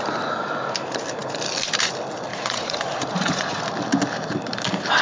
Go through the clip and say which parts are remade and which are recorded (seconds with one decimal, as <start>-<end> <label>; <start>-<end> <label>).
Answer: 0.0-2.3 recorded; 2.3-3.6 remade; 3.6-5.0 recorded